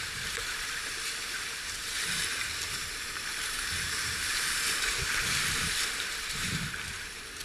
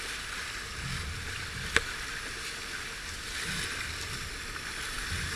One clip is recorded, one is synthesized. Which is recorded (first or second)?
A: second